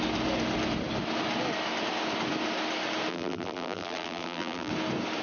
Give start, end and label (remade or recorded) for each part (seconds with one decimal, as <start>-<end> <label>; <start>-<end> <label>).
0.0-3.1 recorded; 3.1-4.7 remade; 4.7-5.2 recorded

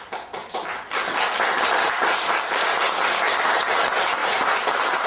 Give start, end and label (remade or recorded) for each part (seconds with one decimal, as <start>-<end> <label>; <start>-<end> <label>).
0.0-4.2 recorded; 4.2-5.1 remade

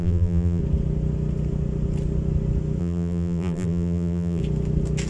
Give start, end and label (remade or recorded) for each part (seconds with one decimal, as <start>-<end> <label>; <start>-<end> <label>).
0.0-0.6 remade; 0.6-2.8 recorded; 2.8-4.4 remade; 4.4-5.1 recorded

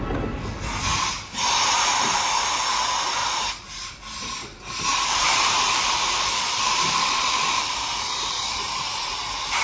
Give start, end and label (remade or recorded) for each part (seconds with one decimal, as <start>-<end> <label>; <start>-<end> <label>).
0.0-0.9 recorded; 0.9-2.2 remade; 2.2-3.2 recorded; 3.2-4.0 remade; 4.0-4.4 recorded; 4.4-8.9 remade; 8.9-9.6 recorded

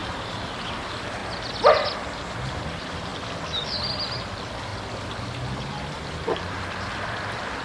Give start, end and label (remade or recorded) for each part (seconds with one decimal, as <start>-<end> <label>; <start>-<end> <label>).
0.0-1.2 remade; 1.2-2.2 recorded; 2.2-3.1 remade; 3.1-4.1 recorded; 4.1-7.6 remade

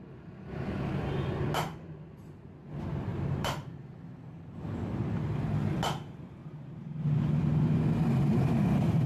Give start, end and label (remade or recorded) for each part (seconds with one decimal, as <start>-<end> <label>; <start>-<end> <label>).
0.0-3.1 recorded; 3.1-3.8 remade; 3.8-6.4 recorded; 6.4-8.4 remade; 8.4-9.1 recorded